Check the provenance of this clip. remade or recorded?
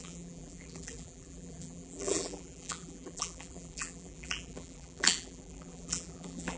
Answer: remade